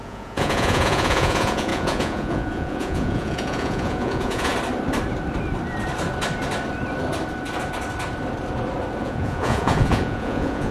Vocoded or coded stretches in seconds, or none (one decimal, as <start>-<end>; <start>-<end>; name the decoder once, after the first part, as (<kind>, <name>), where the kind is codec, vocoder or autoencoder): 0.0-4.5 (vocoder, Vocos); 9.0-10.7